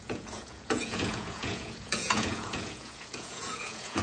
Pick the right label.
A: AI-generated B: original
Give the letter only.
A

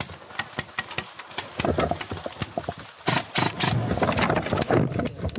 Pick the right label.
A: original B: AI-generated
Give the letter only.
A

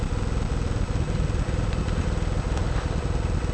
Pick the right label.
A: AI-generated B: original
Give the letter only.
B